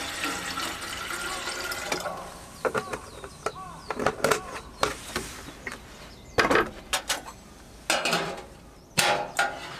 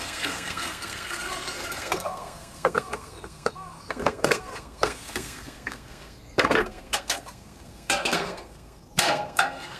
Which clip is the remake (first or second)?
second